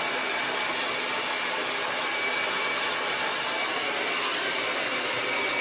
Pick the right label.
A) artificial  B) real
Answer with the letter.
B